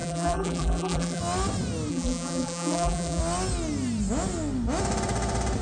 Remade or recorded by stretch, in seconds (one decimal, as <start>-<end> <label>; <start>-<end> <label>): 0.0-1.2 remade; 1.2-1.9 recorded; 1.9-3.2 remade; 3.2-5.6 recorded